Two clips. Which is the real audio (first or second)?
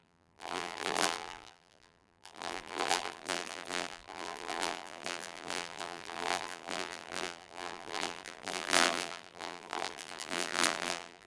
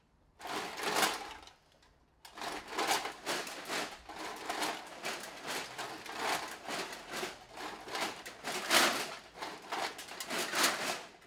second